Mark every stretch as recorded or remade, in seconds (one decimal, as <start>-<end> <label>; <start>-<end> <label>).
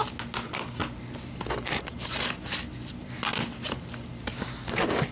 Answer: 0.0-5.1 recorded